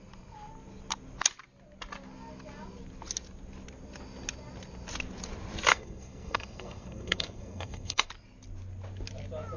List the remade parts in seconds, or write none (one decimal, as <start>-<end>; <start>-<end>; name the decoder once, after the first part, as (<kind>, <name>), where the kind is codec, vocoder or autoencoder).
5.7-8.1 (codec, SNAC)